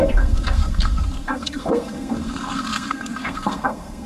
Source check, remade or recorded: remade